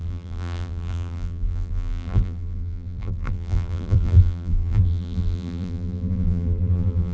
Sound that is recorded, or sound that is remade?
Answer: remade